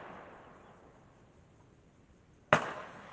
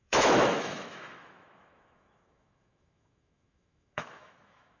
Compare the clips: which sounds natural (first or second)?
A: first